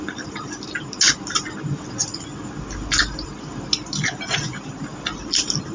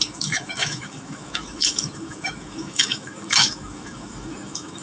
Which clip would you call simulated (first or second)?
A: second